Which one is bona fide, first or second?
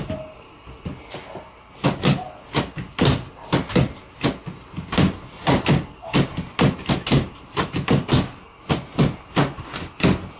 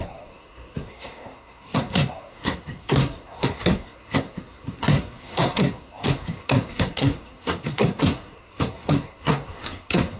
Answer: first